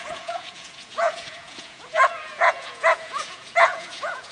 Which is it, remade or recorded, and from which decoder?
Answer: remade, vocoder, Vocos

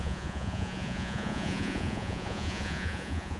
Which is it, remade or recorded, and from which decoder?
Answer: remade, vocoder, Vocos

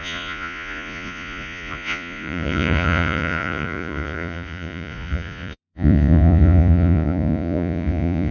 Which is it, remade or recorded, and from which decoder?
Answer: remade, vocoder, Vocos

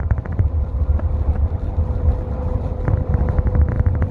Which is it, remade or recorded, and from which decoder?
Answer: remade, vocoder, BigVGAN v2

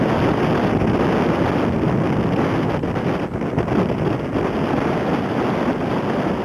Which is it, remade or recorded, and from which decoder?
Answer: recorded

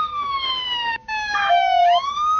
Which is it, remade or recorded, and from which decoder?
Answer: remade, codec, DAC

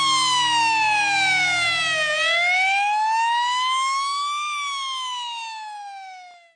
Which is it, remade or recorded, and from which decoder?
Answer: recorded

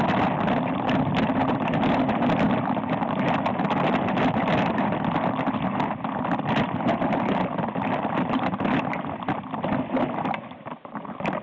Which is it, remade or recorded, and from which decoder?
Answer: recorded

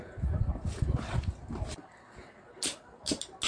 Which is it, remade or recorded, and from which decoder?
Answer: recorded